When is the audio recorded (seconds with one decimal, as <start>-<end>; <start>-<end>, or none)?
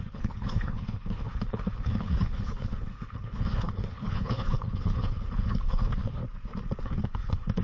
6.2-6.8